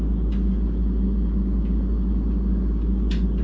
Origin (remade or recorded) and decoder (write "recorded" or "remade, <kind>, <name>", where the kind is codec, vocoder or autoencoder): recorded